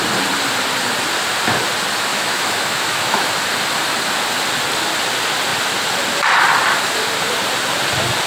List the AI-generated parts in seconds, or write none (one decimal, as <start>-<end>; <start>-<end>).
2.1-3.3